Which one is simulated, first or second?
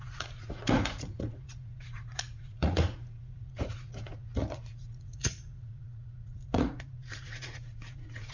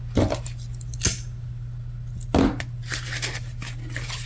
first